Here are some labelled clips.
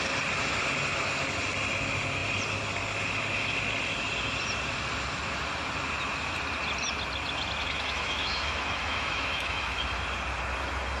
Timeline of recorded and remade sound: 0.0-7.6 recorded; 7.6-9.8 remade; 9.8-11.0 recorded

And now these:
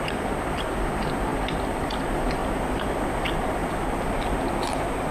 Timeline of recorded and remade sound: 0.0-5.1 recorded

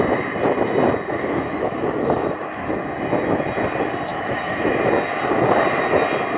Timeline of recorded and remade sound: 0.0-1.1 recorded; 1.1-2.8 remade; 2.8-4.1 recorded; 4.1-4.7 remade; 4.7-6.4 recorded

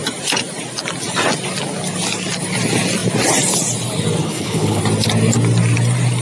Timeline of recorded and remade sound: 0.0-4.2 recorded; 4.2-4.8 remade; 4.8-6.2 recorded